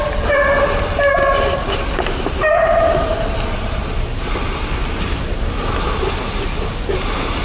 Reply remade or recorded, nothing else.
recorded